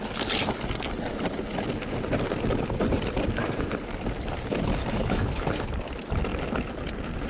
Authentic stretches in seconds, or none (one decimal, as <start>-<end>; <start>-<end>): 0.0-4.8; 5.4-7.3